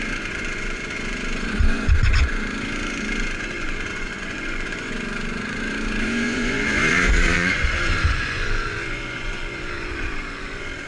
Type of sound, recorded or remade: remade